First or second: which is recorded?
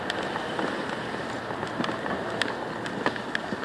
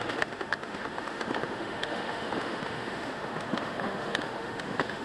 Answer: first